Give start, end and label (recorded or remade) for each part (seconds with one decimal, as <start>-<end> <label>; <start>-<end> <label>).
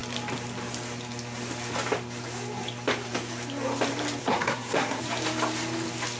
0.0-4.2 recorded; 4.2-5.0 remade; 5.0-6.2 recorded